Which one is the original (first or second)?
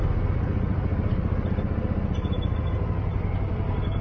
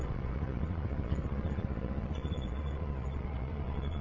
first